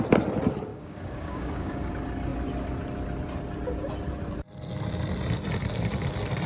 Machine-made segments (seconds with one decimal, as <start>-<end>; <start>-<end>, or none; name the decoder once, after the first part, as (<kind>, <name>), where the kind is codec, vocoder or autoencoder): 0.7-1.9 (codec, DAC)